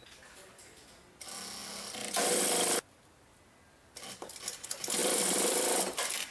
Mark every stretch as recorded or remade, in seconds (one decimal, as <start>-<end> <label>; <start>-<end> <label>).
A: 0.0-5.0 recorded; 5.0-6.3 remade